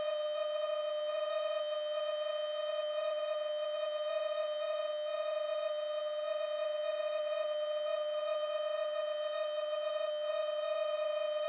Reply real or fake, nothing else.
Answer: fake